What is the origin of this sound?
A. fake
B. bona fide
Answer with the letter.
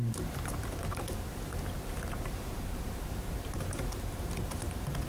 A